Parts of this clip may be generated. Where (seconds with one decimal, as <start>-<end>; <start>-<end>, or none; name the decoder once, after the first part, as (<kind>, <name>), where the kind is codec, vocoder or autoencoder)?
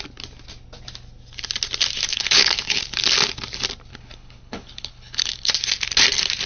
2.1-2.8 (codec, HILCodec); 3.9-5.5